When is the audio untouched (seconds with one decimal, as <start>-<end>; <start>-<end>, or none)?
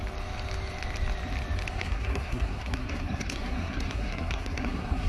0.0-1.7